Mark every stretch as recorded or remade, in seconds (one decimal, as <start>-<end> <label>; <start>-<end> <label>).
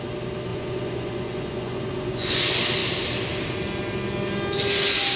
0.0-0.5 recorded; 0.5-2.4 remade; 2.4-5.2 recorded